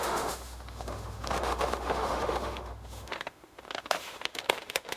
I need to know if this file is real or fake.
fake